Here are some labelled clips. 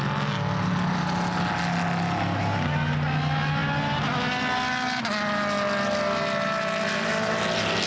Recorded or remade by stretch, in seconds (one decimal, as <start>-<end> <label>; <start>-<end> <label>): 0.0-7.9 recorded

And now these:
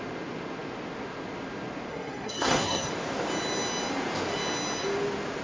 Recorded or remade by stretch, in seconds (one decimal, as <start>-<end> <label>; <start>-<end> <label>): 0.0-1.9 recorded; 1.9-2.9 remade; 2.9-5.4 recorded

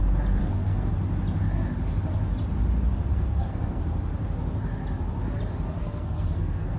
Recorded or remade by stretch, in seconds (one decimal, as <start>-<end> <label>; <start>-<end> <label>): 0.0-0.4 recorded; 0.4-0.9 remade; 0.9-3.1 recorded; 3.1-3.8 remade; 3.8-5.8 recorded; 5.8-6.8 remade

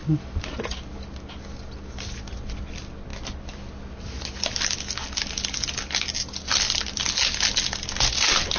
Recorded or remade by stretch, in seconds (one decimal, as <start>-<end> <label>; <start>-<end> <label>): 0.0-8.6 recorded